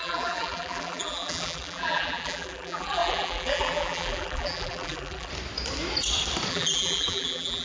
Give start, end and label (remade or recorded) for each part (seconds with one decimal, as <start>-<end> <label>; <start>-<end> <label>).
0.0-5.3 remade; 5.3-6.5 recorded; 6.5-7.6 remade